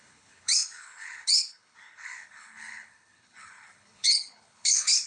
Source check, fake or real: fake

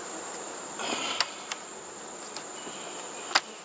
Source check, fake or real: real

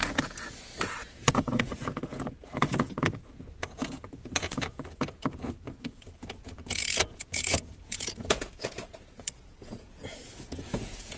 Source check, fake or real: fake